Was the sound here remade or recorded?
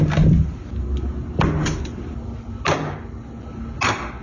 recorded